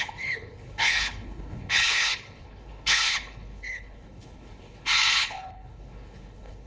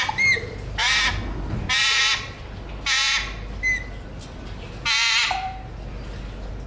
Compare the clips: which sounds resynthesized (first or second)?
first